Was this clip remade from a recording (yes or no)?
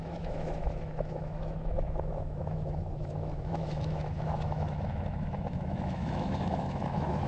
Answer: yes